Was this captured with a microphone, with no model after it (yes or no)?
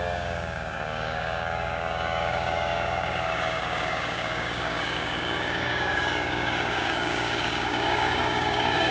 no